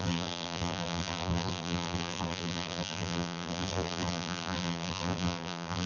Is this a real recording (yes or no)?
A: no